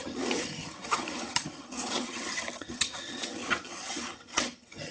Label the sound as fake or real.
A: fake